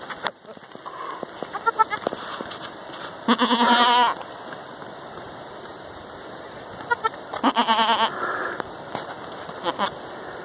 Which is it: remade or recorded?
recorded